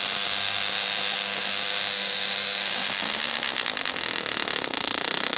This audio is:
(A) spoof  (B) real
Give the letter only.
A